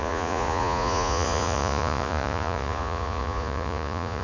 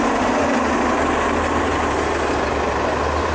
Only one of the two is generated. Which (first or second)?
first